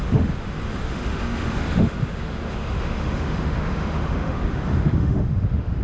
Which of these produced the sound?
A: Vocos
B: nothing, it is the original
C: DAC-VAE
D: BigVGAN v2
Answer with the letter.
C